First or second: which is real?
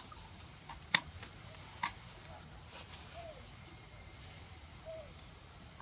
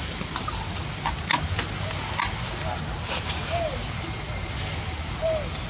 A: second